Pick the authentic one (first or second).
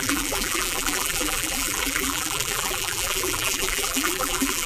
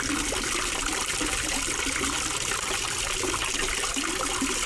second